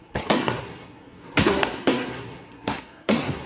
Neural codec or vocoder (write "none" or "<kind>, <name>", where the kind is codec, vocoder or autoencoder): codec, SNAC